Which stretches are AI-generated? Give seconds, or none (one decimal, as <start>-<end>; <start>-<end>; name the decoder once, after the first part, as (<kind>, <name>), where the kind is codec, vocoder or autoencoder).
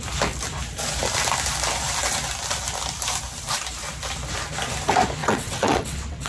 5.2-6.3 (vocoder, WaveNeXt)